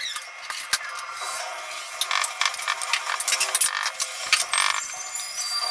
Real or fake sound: real